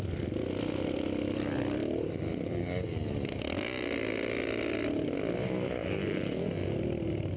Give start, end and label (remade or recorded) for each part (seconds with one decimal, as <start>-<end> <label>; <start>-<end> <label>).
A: 0.0-5.8 recorded; 5.8-6.5 remade; 6.5-7.4 recorded